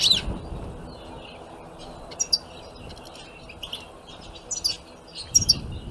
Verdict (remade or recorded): recorded